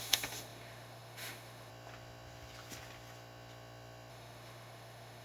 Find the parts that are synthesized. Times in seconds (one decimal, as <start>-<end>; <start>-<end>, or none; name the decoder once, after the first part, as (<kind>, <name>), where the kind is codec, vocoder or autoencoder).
0.0-1.7 (autoencoder, DAC-VAE); 4.1-5.2

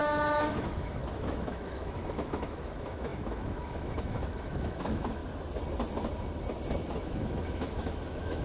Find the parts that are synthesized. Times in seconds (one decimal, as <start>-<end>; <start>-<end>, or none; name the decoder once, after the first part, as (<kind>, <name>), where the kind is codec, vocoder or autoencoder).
0.5-5.2 (autoencoder, DAC-VAE); 7.0-8.4

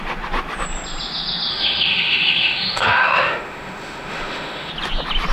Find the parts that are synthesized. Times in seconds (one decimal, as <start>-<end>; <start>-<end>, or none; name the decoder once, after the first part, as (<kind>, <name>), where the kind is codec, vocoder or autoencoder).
1.5-4.7 (autoencoder, DAC-VAE)